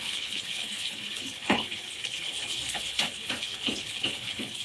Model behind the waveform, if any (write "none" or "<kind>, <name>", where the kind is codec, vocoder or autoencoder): codec, HILCodec